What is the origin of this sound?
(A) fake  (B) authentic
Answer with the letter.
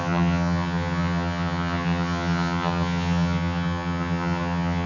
A